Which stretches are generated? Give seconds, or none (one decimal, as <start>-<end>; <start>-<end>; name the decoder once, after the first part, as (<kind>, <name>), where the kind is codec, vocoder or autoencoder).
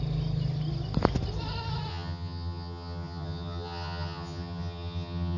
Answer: 1.9-5.4 (vocoder, HiFi-GAN)